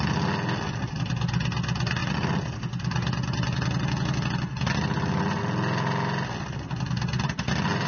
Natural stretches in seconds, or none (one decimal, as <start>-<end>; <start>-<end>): 0.0-7.9